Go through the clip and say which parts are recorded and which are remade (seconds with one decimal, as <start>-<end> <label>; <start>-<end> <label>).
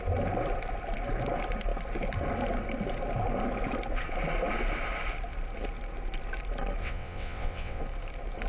0.0-6.8 recorded; 6.8-7.8 remade; 7.8-8.5 recorded